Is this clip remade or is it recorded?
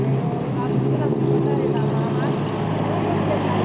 recorded